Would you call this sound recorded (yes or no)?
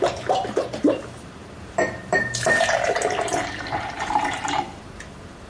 no